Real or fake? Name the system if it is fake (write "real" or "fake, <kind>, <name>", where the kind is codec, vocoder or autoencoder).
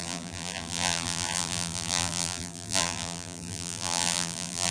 fake, vocoder, BigVGAN v2